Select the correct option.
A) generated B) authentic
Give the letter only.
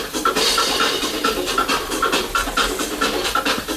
A